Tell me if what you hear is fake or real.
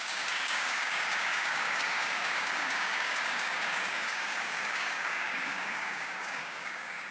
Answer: fake